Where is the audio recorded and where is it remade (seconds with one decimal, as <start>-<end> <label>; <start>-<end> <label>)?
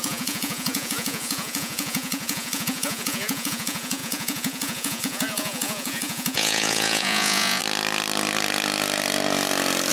0.0-7.6 remade; 7.6-9.9 recorded